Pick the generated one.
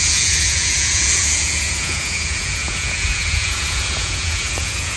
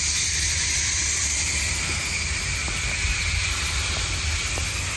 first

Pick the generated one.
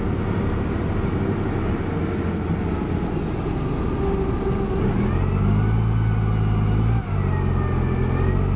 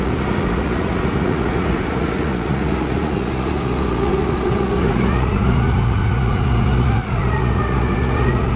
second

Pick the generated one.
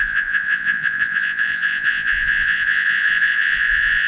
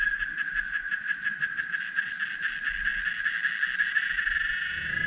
first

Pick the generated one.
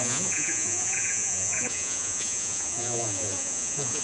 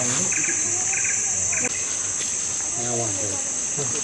first